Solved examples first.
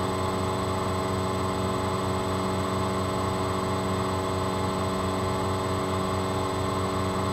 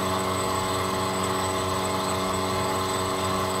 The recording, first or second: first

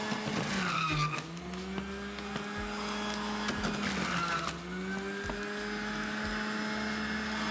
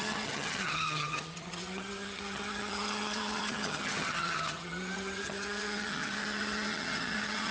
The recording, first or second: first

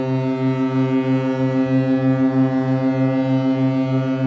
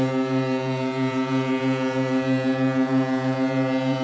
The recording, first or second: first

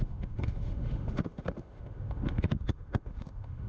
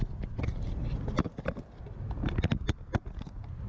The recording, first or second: second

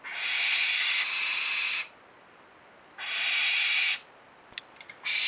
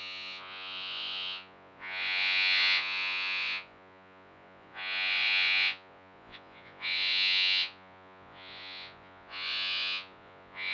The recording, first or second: first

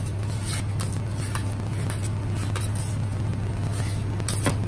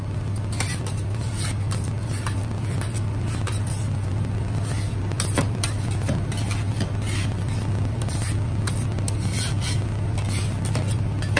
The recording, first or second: first